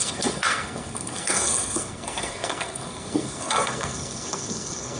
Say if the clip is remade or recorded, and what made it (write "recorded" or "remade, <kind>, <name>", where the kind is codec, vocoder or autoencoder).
remade, codec, SNAC